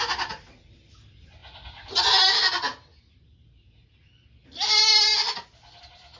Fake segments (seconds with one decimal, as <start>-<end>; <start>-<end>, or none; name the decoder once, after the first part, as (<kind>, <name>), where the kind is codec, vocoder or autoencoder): none